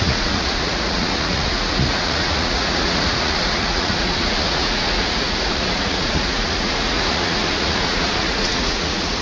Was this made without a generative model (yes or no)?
no